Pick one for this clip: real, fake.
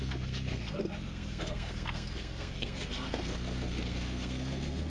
fake